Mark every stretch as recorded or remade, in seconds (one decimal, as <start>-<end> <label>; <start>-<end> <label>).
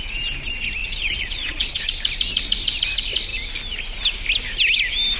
0.0-0.8 recorded; 0.8-1.8 remade; 1.8-5.2 recorded